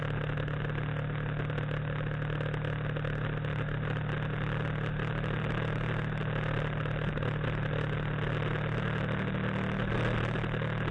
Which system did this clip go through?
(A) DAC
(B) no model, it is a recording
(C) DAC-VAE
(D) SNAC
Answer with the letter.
B